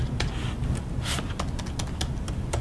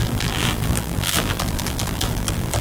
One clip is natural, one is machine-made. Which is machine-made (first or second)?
second